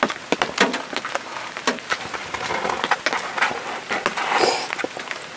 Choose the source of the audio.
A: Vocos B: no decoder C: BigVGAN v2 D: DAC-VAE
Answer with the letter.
B